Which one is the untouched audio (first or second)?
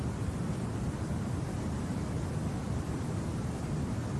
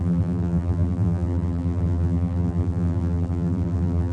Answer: first